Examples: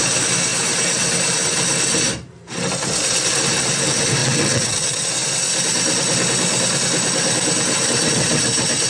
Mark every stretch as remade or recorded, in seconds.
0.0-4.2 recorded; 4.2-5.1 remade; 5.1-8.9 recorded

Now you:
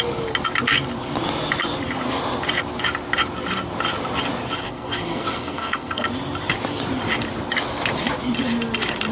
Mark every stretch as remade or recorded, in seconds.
0.0-4.6 recorded; 4.6-6.1 remade; 6.1-9.1 recorded

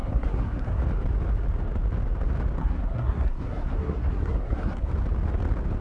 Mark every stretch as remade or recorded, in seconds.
0.0-0.8 remade; 0.8-2.6 recorded; 2.6-4.9 remade; 4.9-5.8 recorded

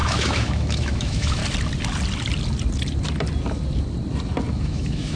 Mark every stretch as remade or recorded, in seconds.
0.0-1.4 remade; 1.4-4.5 recorded; 4.5-5.2 remade

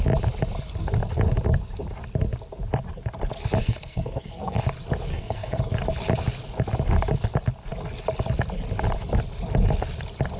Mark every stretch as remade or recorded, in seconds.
0.0-3.6 recorded; 3.6-4.6 remade; 4.6-5.1 recorded; 5.1-5.6 remade; 5.6-10.4 recorded

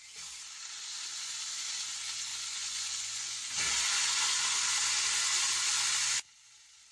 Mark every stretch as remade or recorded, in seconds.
0.0-2.3 recorded; 2.3-4.4 remade; 4.4-6.9 recorded